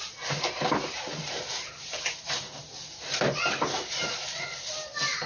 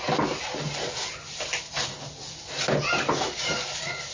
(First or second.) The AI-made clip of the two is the first